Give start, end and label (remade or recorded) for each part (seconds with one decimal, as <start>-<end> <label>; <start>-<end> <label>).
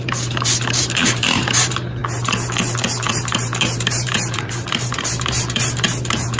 0.0-2.0 remade; 2.0-3.1 recorded; 3.1-6.4 remade